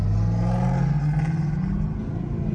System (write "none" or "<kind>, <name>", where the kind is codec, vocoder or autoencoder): none